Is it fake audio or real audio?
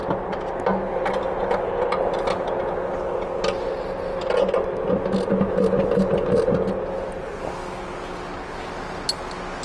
real